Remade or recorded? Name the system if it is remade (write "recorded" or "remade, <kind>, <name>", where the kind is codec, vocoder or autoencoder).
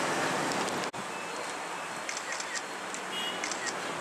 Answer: recorded